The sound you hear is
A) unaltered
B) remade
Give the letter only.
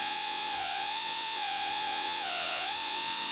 B